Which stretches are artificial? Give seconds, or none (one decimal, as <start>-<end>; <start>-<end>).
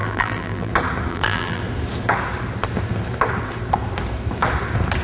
0.0-0.7; 1.1-1.6